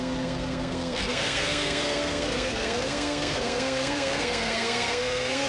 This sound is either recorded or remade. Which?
remade